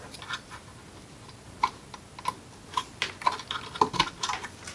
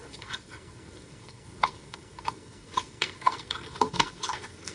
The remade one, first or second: second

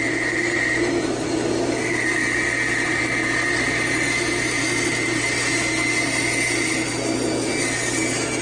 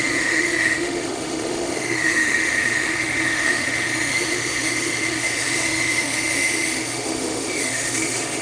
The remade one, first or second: second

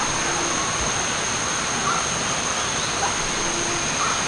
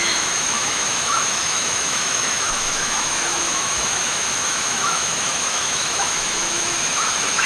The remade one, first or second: second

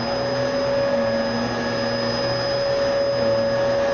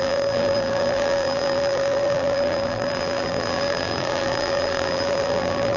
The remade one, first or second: second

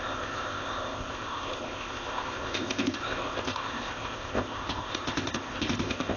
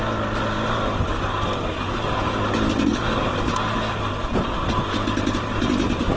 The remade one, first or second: first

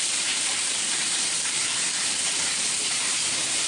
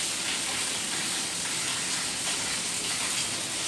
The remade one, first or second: first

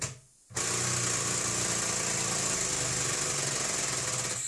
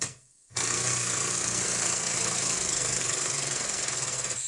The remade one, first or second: second